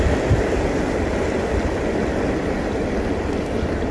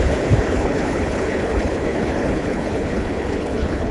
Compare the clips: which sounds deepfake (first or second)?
second